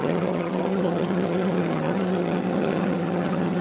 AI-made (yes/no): yes